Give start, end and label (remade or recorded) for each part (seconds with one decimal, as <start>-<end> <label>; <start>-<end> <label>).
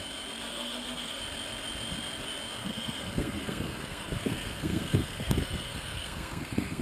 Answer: 0.0-0.5 recorded; 0.5-1.2 remade; 1.2-2.6 recorded; 2.6-6.8 remade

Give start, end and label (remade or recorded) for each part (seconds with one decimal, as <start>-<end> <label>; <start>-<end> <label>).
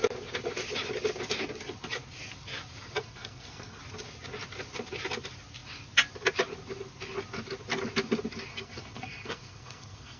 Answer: 0.0-3.0 recorded; 3.0-3.8 remade; 3.8-8.5 recorded; 8.5-10.2 remade